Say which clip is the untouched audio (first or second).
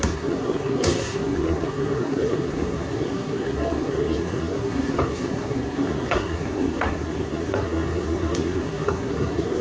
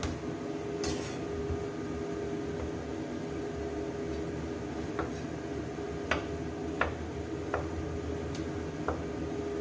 second